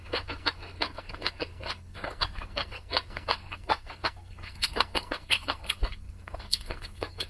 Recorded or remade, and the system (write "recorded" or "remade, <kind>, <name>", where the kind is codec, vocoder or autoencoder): remade, codec, SNAC